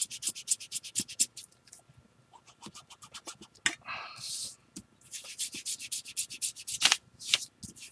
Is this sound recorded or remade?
recorded